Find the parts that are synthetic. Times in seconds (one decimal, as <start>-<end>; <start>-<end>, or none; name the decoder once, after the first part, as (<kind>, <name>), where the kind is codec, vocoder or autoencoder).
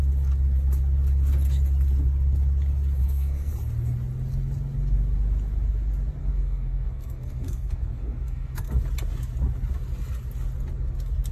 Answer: 3.0-3.5 (codec, SNAC); 6.2-8.8